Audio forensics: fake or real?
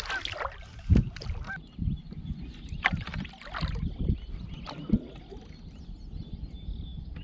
real